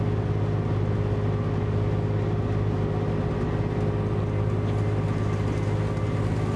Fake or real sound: real